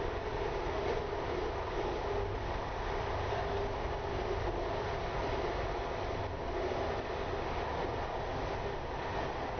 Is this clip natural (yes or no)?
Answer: yes